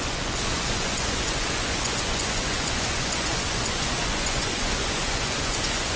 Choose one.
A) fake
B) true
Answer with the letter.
A